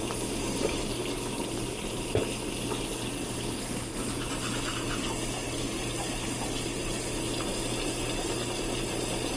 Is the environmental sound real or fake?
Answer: real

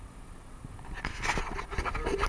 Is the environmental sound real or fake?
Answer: real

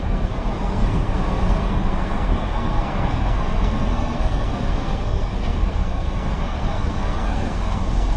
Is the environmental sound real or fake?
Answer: fake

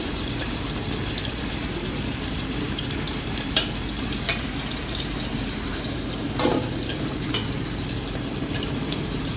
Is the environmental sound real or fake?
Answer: fake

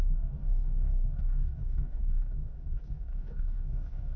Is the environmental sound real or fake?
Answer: fake